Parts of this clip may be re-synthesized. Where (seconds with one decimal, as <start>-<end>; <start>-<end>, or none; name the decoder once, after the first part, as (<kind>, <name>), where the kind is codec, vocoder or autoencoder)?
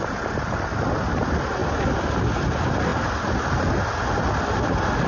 none